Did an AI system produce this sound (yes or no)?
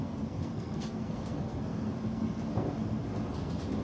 yes